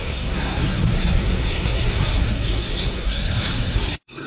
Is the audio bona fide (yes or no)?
no